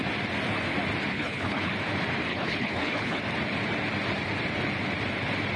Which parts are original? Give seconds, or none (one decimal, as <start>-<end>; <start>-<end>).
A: 0.0-1.1; 1.7-2.3; 3.2-5.6